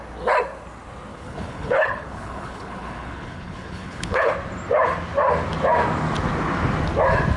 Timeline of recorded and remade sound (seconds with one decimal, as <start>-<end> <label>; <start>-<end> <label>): 0.0-1.1 recorded; 1.1-4.3 remade; 4.3-7.4 recorded